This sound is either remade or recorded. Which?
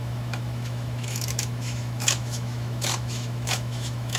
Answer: remade